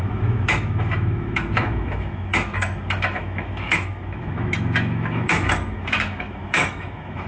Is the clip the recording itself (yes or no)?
no